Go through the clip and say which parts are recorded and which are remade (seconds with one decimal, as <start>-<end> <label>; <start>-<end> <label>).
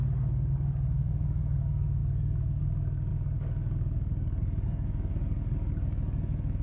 0.0-6.6 remade